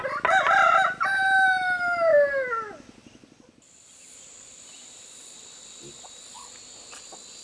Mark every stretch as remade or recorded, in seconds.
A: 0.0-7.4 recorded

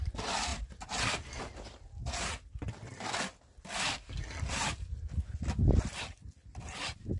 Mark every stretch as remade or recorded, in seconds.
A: 0.0-7.2 recorded

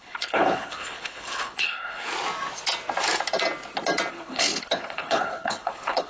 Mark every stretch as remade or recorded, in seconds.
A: 0.0-2.1 remade; 2.1-4.1 recorded; 4.1-6.1 remade

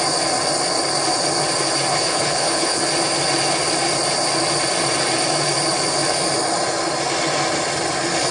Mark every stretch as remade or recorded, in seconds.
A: 0.0-1.9 recorded; 1.9-2.8 remade; 2.8-8.3 recorded

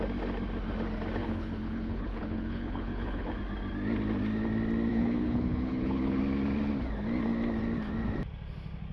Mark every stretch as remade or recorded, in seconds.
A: 0.0-1.2 recorded; 1.2-3.3 remade; 3.3-4.9 recorded; 4.9-6.2 remade; 6.2-8.9 recorded

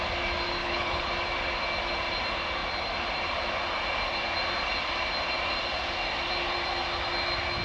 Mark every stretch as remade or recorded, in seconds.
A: 0.0-0.6 recorded; 0.6-1.1 remade; 1.1-7.6 recorded